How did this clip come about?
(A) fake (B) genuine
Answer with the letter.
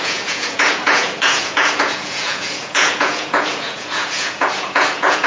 A